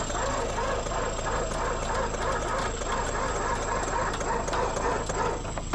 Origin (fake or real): real